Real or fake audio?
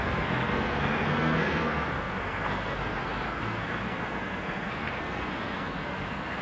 fake